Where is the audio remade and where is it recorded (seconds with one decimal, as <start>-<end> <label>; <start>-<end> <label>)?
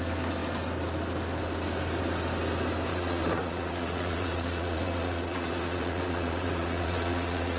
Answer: 0.0-2.9 recorded; 2.9-7.6 remade